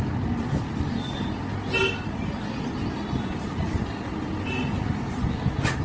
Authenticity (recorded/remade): recorded